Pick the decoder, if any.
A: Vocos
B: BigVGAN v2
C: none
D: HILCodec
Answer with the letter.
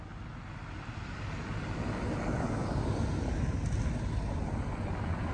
C